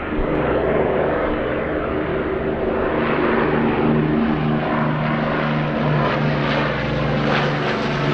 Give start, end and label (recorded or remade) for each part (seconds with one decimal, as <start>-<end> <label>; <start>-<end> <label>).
0.0-2.1 remade; 2.1-6.0 recorded; 6.0-6.4 remade; 6.4-8.1 recorded